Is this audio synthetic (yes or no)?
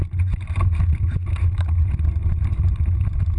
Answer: no